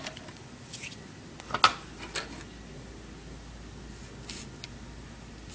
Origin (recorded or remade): recorded